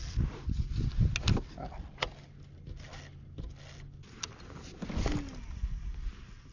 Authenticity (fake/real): real